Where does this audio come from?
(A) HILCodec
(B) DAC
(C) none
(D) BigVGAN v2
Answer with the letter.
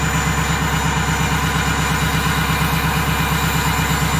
C